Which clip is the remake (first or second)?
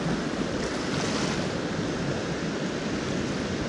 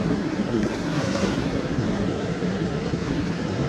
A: second